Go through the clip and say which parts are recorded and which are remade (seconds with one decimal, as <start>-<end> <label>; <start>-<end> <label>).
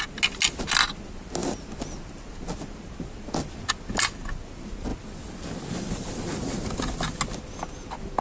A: 0.0-8.2 recorded